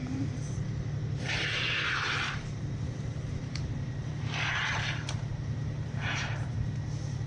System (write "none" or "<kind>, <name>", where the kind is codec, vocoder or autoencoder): vocoder, BigVGAN v2